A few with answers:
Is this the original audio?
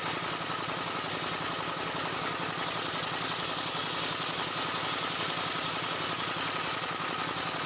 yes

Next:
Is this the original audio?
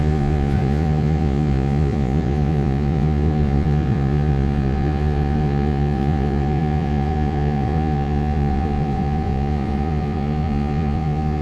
no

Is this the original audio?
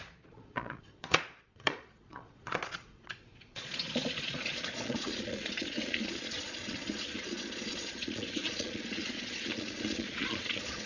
no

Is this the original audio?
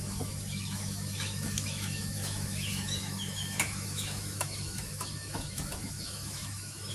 no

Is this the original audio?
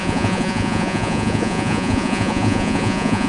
no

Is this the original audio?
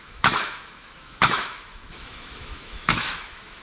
no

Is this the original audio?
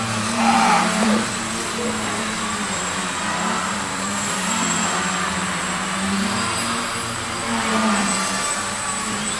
no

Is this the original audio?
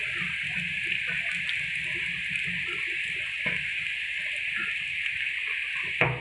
yes